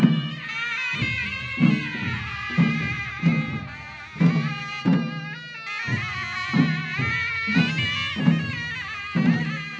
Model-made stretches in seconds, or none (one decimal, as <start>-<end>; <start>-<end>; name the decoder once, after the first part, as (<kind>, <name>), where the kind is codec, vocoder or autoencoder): none